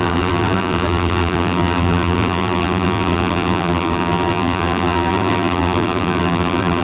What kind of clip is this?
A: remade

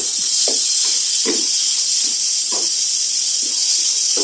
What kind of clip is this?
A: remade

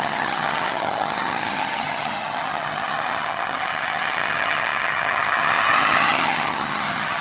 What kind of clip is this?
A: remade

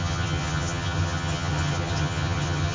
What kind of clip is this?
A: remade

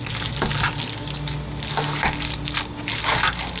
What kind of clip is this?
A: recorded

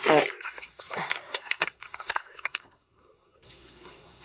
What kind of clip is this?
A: remade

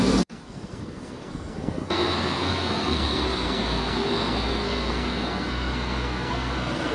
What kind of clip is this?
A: remade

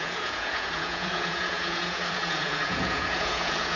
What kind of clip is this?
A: remade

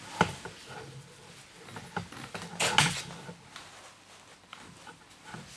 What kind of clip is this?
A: recorded